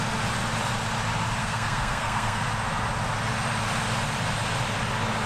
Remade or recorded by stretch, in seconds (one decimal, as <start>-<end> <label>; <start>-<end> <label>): 0.0-1.4 recorded; 1.4-2.4 remade; 2.4-5.3 recorded